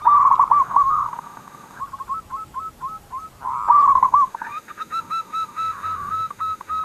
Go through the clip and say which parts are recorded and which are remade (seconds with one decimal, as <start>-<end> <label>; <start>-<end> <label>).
0.0-0.6 recorded; 0.6-1.8 remade; 1.8-3.9 recorded; 3.9-6.8 remade